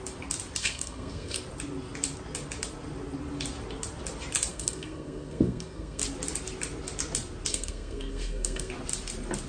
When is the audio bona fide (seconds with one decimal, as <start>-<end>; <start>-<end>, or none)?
0.0-0.6; 1.4-4.5; 6.0-7.5; 8.7-9.5